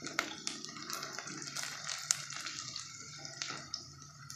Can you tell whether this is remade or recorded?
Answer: recorded